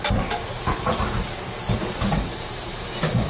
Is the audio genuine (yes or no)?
no